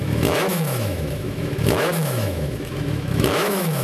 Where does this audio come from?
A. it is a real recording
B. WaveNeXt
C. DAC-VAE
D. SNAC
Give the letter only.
C